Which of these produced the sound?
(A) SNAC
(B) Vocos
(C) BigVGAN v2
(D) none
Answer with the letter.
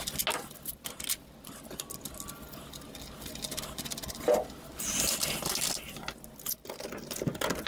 D